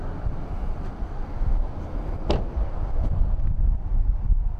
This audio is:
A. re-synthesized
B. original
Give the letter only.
B